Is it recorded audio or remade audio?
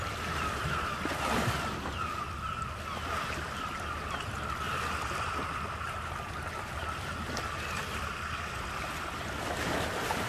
recorded